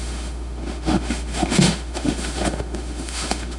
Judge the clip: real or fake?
fake